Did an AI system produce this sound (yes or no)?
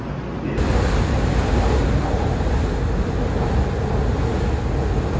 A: no